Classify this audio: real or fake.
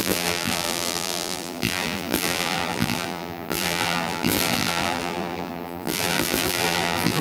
fake